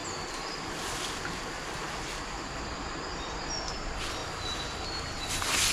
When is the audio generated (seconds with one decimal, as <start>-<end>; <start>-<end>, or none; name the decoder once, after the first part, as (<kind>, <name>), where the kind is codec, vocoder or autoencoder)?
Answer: 0.0-4.2 (vocoder, BigVGAN v2); 5.3-5.7